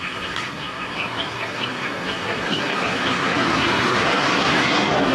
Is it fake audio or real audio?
fake